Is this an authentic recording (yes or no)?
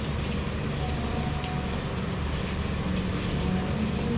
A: yes